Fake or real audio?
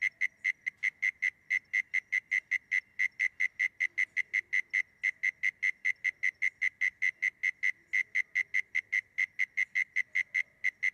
real